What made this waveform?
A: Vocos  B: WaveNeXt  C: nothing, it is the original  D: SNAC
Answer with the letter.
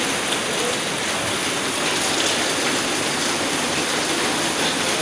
C